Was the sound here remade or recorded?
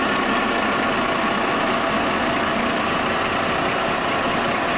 recorded